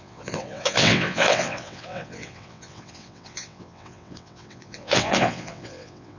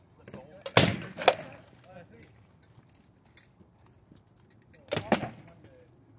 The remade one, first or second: first